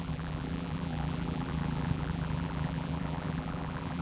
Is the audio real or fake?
fake